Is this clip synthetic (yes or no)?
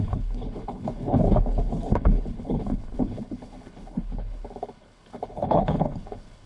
yes